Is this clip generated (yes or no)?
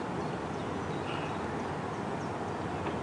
no